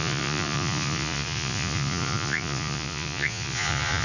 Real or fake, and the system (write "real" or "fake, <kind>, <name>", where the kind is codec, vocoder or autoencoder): fake, vocoder, Vocos